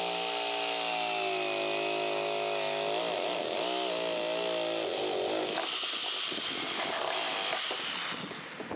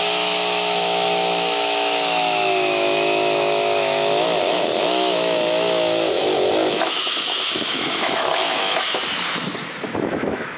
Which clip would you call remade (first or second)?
second